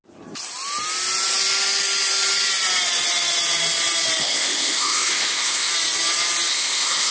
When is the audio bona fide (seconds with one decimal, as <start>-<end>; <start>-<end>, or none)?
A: 0.0-4.2; 5.7-6.5